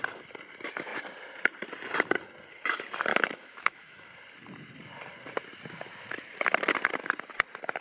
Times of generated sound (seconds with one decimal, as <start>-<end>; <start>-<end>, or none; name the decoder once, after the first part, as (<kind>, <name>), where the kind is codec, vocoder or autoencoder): 3.1-4.0 (autoencoder, DAC-VAE)